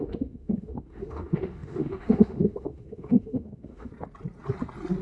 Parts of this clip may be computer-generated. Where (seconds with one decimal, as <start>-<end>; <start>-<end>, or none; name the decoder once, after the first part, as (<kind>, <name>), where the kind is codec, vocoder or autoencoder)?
0.0-3.9 (autoencoder, DAC-VAE)